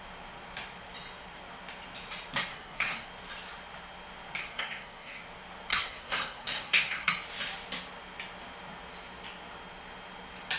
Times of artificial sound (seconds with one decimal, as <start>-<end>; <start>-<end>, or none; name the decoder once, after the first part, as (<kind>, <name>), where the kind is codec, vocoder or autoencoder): 2.5-3.1 (codec, SNAC); 4.4-5.2; 5.7-7.1